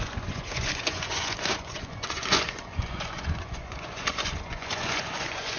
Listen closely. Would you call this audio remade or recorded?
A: remade